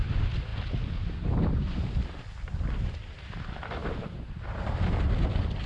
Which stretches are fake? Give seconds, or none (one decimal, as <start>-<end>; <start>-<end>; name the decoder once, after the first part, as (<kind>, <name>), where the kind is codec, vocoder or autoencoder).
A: none